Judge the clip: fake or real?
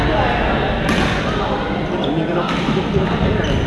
real